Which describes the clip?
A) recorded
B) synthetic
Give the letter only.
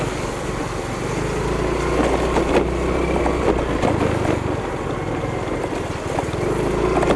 A